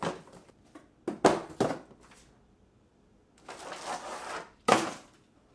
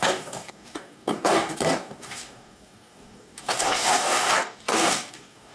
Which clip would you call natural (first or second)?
first